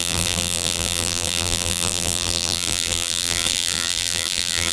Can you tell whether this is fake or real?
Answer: fake